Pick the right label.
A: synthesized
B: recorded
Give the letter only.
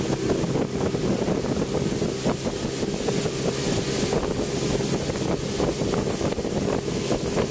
B